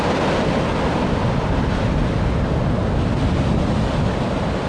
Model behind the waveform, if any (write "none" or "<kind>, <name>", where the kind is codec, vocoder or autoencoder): none